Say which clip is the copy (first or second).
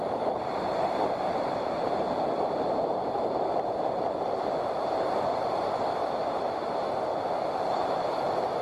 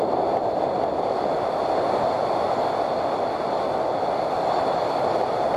first